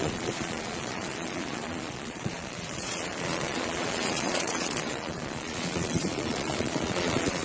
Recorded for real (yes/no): no